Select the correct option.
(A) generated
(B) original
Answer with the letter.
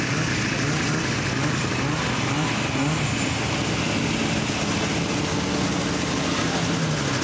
B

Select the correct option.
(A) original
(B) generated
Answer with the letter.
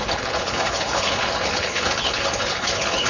B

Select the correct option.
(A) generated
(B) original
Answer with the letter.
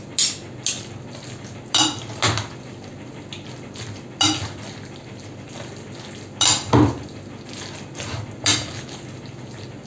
B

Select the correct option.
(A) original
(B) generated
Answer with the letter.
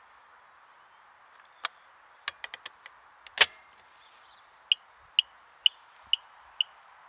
A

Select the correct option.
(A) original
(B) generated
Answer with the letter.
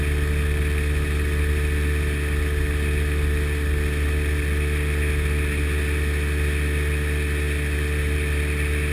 A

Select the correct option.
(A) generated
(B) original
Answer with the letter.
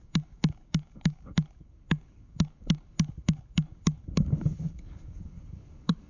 A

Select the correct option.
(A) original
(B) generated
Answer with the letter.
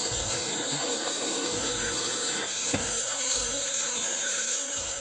B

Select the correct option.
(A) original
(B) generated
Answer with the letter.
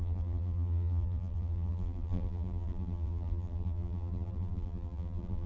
B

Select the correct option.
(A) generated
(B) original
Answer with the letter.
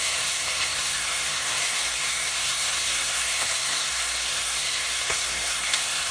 A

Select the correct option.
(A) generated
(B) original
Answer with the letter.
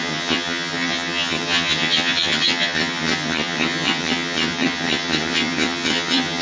A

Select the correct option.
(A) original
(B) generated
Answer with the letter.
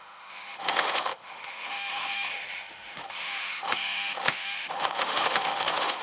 B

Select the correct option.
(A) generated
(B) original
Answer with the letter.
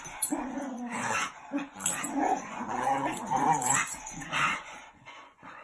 A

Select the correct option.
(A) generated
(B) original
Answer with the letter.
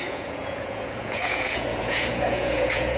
A